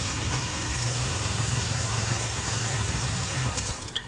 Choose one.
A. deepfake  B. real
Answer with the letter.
A